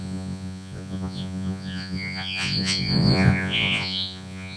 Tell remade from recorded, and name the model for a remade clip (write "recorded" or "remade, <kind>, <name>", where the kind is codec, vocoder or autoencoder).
remade, vocoder, Vocos